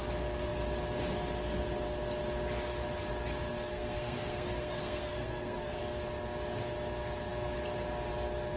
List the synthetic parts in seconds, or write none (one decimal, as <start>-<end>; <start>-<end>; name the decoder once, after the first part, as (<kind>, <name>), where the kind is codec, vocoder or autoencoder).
3.7-5.8 (codec, SNAC)